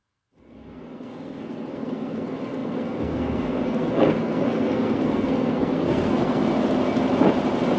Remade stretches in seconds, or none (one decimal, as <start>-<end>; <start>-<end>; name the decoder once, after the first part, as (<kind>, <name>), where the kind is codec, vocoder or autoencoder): 0.0-6.4 (codec, SNAC)